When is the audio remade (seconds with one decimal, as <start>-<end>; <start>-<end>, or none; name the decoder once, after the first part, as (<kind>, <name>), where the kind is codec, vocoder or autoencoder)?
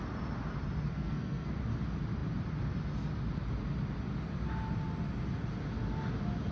0.9-1.5 (codec, SNAC)